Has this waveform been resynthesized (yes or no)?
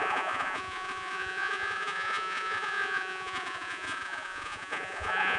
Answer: yes